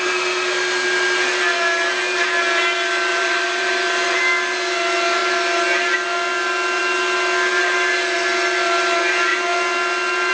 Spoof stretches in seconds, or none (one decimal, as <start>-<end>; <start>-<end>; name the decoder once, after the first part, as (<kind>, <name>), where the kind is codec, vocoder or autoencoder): 3.1-4.2 (vocoder, BigVGAN v2)